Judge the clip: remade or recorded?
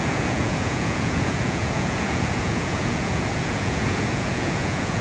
remade